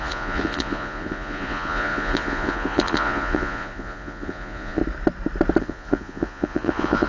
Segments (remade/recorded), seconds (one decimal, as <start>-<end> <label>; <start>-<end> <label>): 0.0-4.8 remade; 4.8-5.6 recorded; 5.6-7.1 remade